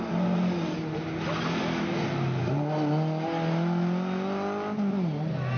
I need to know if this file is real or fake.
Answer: real